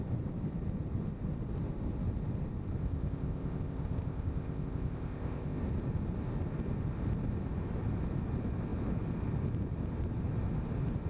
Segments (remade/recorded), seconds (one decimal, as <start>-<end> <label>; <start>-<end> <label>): 0.0-2.8 recorded; 2.8-5.6 remade; 5.6-11.1 recorded